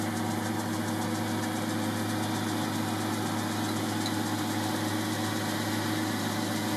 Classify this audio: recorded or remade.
recorded